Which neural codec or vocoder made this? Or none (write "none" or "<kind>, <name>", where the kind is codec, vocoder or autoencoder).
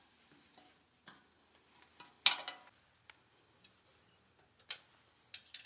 none